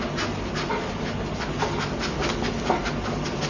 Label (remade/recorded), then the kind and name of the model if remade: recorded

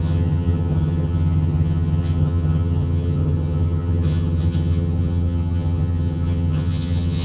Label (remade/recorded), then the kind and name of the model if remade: remade, vocoder, HiFi-GAN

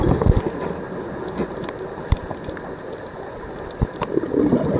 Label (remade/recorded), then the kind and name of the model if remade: recorded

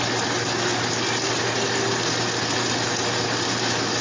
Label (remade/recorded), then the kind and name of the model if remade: recorded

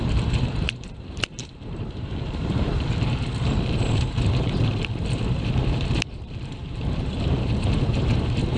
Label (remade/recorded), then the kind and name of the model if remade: remade, vocoder, BigVGAN v2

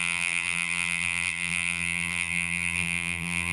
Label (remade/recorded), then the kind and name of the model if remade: remade, vocoder, BigVGAN v2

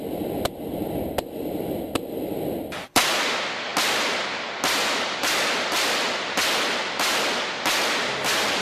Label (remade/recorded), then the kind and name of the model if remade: recorded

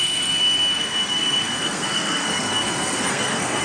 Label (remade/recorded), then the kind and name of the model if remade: remade, codec, SNAC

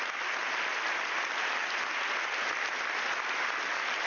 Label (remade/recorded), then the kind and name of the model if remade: recorded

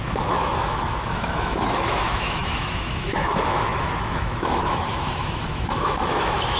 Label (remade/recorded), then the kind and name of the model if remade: remade, autoencoder, DAC-VAE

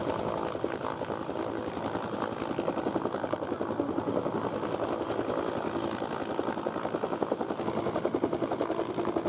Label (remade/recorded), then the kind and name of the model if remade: recorded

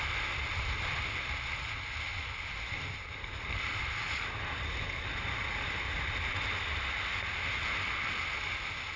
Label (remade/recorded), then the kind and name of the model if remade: recorded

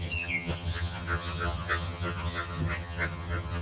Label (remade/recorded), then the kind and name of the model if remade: remade, vocoder, HiFi-GAN